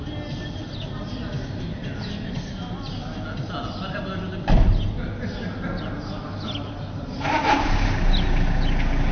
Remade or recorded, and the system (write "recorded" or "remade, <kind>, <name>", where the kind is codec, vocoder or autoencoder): recorded